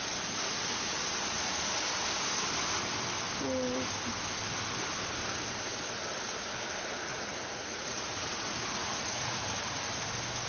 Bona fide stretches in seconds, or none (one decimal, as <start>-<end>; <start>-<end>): 0.0-7.1; 8.4-8.8; 9.4-10.5